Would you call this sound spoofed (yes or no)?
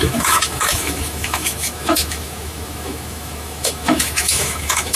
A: yes